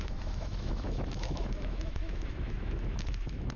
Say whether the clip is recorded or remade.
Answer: remade